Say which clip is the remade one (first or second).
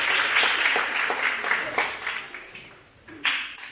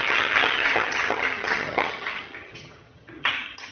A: second